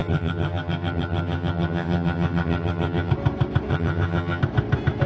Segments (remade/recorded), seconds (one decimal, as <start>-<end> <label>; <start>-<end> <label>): 0.0-3.1 remade; 3.1-3.7 recorded; 3.7-4.4 remade; 4.4-5.1 recorded